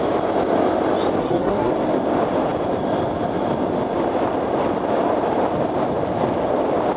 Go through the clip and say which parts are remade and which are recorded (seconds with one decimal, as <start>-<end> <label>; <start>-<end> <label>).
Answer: 0.0-1.2 recorded; 1.2-1.7 remade; 1.7-7.0 recorded